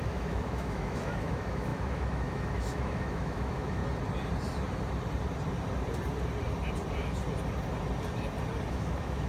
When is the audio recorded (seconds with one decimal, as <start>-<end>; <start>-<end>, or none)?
3.8-8.7